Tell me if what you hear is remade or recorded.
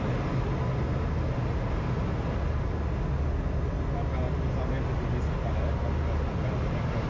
recorded